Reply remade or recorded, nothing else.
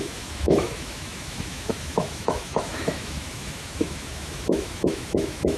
remade